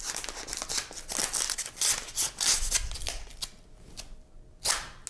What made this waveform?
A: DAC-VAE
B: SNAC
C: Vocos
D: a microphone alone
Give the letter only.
D